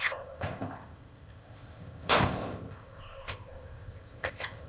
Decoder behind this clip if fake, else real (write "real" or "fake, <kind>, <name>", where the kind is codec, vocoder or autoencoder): fake, codec, ZipCodec